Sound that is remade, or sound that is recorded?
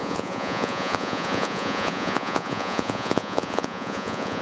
remade